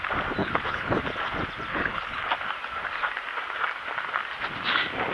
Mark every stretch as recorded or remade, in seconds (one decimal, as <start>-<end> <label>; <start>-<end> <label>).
0.0-0.4 recorded; 0.4-1.0 remade; 1.0-1.7 recorded; 1.7-2.3 remade; 2.3-5.1 recorded